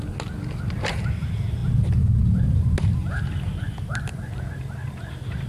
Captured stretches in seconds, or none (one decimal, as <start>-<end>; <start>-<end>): 0.0-5.5